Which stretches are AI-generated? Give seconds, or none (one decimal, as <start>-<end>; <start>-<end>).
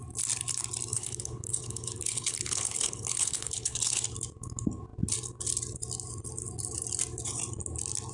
0.9-4.0